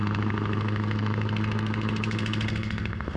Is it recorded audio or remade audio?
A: remade